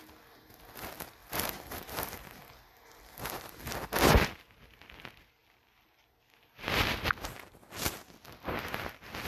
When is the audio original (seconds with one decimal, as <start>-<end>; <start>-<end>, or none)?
0.0-9.3